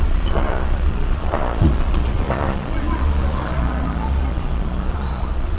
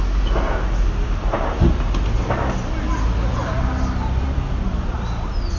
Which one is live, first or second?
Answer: second